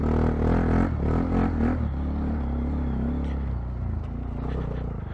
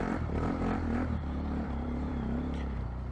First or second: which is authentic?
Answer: first